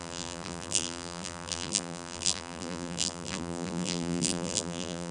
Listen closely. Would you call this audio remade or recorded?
remade